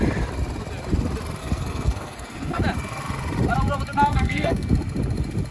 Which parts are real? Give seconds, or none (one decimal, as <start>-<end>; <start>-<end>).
0.0-1.4; 2.6-4.1; 4.7-5.5